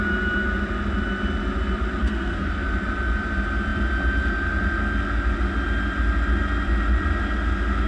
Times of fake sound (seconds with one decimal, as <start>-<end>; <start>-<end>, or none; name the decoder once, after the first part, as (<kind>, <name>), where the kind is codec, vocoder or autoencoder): 2.0-2.5 (codec, SNAC)